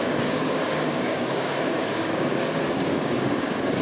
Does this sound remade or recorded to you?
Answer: remade